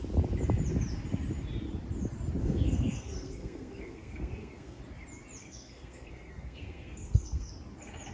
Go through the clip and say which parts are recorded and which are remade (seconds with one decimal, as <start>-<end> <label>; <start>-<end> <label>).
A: 0.0-2.4 recorded; 2.4-4.8 remade; 4.8-5.4 recorded; 5.4-7.5 remade; 7.5-8.1 recorded